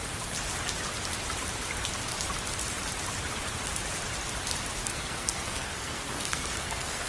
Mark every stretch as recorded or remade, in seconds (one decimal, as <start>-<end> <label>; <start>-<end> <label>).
0.0-4.8 recorded; 4.8-7.1 remade